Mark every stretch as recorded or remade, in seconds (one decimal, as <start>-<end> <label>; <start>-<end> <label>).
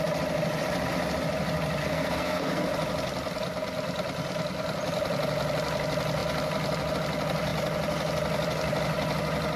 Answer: 0.0-1.8 recorded; 1.8-2.7 remade; 2.7-9.6 recorded